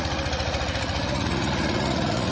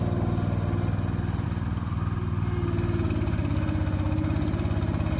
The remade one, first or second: first